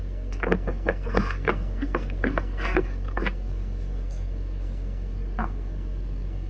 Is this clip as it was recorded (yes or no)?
no